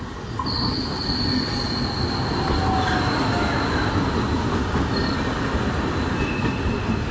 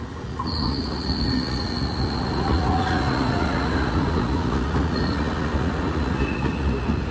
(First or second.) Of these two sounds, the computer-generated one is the second